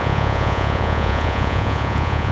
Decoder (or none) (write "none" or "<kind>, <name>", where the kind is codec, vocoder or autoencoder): vocoder, Vocos